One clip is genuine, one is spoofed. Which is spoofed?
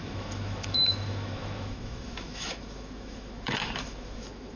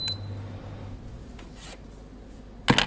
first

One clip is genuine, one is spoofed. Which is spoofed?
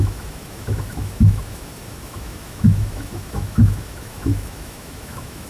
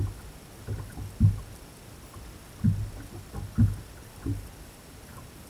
first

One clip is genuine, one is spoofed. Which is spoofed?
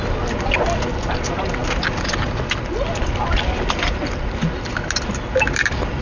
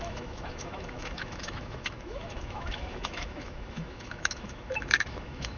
second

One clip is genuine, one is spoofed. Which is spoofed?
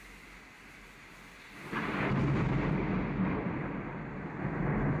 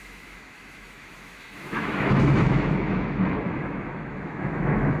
second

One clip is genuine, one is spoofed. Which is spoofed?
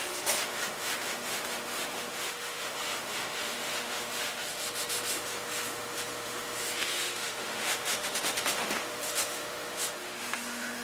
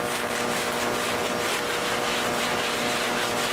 first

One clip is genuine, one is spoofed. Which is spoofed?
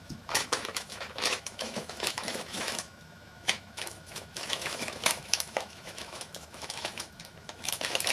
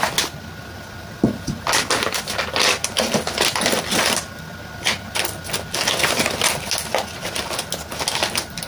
first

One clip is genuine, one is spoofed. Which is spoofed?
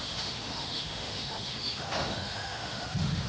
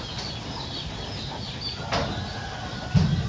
first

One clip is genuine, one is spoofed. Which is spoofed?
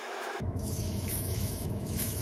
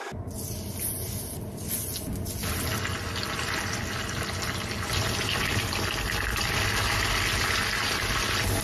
first